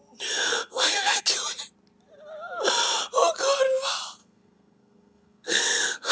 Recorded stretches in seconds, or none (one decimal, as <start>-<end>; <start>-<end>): 0.0-0.5; 1.2-4.2